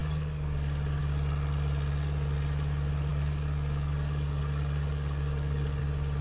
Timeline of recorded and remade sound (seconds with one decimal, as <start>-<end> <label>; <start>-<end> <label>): 0.0-1.0 remade; 1.0-3.1 recorded; 3.1-5.8 remade; 5.8-6.2 recorded